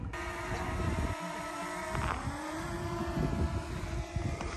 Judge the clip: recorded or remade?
recorded